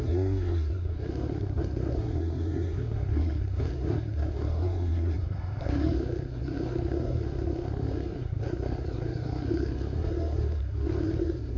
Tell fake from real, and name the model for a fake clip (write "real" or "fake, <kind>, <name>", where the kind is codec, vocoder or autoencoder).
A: fake, codec, SNAC